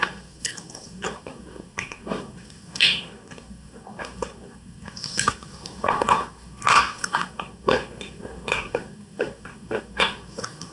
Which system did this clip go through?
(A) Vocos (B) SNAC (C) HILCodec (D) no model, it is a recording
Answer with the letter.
B